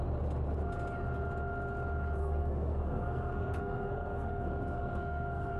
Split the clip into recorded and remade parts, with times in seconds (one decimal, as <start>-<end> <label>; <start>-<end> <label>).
0.0-2.2 recorded; 2.2-5.6 remade